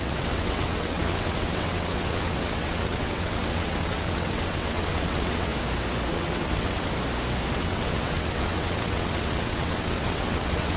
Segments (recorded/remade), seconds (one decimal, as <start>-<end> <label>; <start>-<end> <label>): 0.0-5.5 remade; 5.5-6.1 recorded; 6.1-6.9 remade; 6.9-7.5 recorded; 7.5-10.8 remade